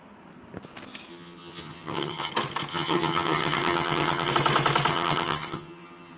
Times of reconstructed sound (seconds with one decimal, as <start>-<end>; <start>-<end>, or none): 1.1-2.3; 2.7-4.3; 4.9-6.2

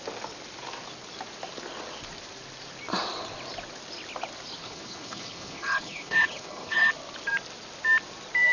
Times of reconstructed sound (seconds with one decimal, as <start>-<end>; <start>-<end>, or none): 4.6-6.9

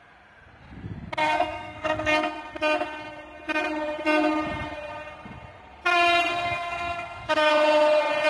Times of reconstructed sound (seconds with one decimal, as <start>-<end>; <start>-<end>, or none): 1.2-2.4; 6.3-7.5